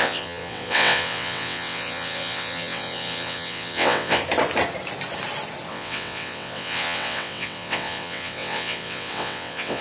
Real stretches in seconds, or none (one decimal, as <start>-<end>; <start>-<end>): 4.2-5.7